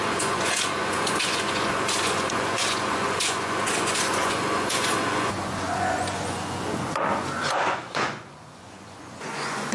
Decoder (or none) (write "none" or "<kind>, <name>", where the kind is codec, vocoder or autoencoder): vocoder, Vocos